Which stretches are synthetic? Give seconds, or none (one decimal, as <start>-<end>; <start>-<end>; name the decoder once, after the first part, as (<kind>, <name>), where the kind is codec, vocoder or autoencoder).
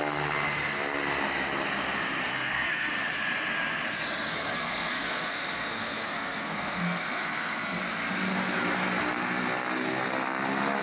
2.3-2.9 (codec, SNAC); 4.3-7.8